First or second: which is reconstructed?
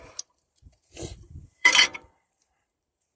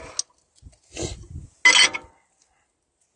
first